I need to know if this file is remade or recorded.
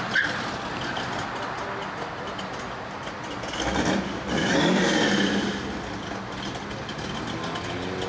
recorded